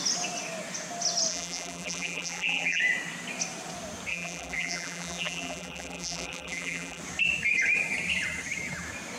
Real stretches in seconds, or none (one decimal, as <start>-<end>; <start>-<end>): 0.0-1.3; 2.8-4.1; 7.0-9.2

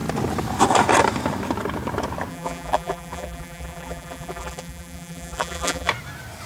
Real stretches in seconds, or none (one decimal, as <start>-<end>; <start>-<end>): 0.0-2.3; 5.9-6.5

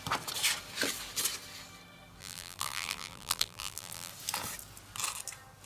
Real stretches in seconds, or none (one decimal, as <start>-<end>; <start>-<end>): 0.0-2.2; 4.1-5.7

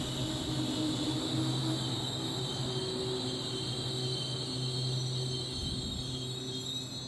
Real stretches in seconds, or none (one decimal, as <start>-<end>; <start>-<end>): 0.0-7.1

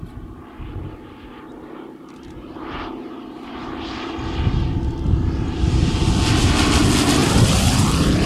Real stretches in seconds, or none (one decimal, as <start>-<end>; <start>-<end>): 0.0-1.5; 4.1-7.2

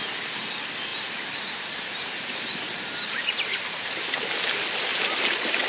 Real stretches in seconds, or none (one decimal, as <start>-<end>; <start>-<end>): 0.0-0.9; 4.3-4.9

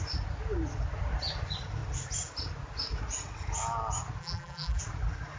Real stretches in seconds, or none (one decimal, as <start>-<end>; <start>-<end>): 0.0-4.2; 4.8-5.4

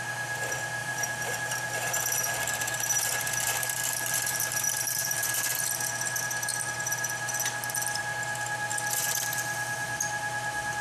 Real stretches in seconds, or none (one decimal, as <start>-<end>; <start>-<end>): 0.0-0.8; 5.4-10.8